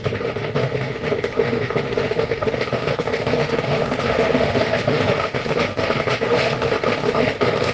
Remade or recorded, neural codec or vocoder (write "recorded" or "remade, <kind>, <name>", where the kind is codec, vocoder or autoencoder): remade, autoencoder, DAC-VAE